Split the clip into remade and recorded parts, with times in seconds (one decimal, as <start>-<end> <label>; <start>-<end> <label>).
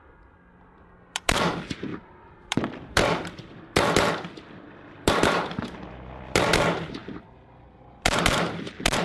0.0-9.0 remade